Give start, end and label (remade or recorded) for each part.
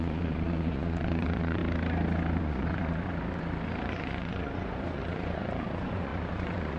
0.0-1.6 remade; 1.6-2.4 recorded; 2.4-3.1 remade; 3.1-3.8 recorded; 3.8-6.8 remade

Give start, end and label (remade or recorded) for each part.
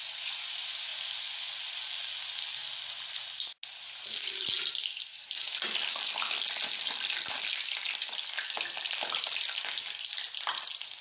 0.0-11.0 recorded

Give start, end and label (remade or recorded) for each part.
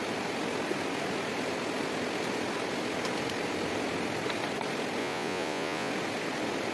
0.0-5.0 recorded; 5.0-5.9 remade; 5.9-6.7 recorded